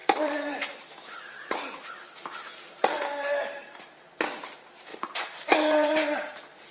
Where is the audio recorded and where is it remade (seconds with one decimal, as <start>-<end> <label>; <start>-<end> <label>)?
0.0-4.0 remade; 4.0-4.9 recorded; 4.9-6.3 remade; 6.3-6.7 recorded